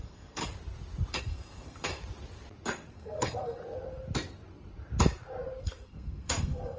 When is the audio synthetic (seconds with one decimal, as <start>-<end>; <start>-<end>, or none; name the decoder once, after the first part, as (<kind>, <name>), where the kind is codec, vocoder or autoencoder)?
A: 0.0-0.4 (codec, SNAC); 1.2-1.9; 2.9-3.6; 5.6-6.8